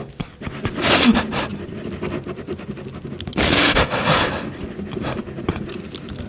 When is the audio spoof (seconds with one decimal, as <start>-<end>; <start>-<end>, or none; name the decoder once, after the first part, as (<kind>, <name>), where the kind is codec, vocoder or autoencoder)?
none